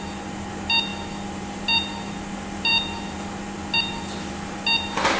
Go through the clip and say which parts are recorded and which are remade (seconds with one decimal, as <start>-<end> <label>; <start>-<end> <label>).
0.0-5.2 recorded